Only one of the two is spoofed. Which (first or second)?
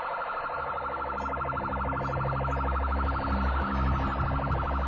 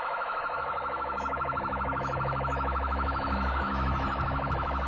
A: second